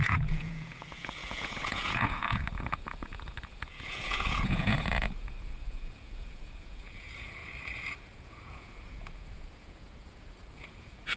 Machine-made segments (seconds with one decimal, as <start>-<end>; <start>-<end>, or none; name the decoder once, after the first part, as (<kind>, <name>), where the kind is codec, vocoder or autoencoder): 0.0-7.4 (vocoder, Vocos); 8.0-11.2